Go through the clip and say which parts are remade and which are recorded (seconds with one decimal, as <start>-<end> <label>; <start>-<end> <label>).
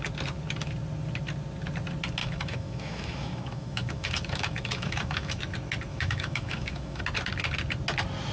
0.0-2.2 recorded; 2.2-5.4 remade; 5.4-5.9 recorded; 5.9-7.0 remade; 7.0-8.3 recorded